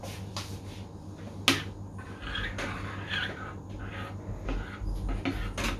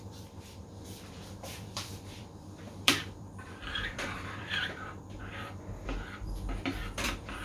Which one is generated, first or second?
second